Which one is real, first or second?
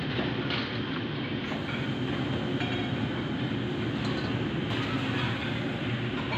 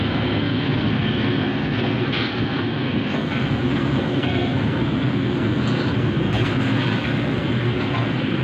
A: first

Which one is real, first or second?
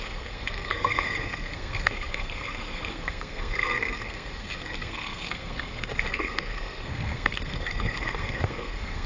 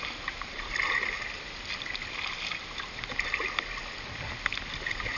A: second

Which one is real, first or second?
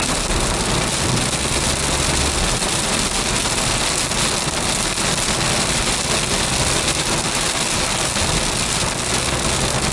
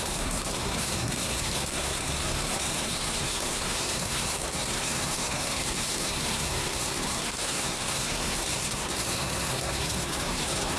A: first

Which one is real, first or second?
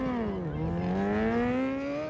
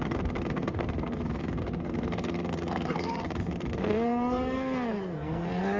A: first